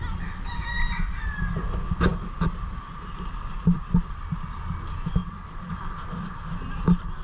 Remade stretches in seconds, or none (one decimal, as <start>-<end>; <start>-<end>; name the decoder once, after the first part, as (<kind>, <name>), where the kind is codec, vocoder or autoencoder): none